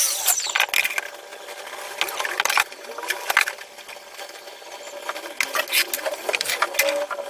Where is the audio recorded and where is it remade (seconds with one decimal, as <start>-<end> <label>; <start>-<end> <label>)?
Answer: 0.0-6.1 recorded; 6.1-6.6 remade; 6.6-7.3 recorded